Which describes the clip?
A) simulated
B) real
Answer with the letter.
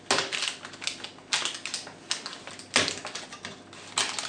B